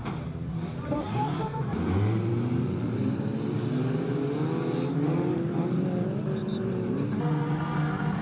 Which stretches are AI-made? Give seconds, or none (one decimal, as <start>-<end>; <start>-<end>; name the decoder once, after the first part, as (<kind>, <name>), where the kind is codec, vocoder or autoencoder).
0.0-2.3 (vocoder, BigVGAN v2); 6.4-7.2